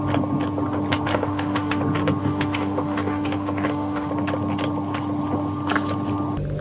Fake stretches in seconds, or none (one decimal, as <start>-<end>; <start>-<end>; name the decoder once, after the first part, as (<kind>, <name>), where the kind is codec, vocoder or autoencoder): 1.1-1.8 (autoencoder, DAC-VAE); 2.2-4.1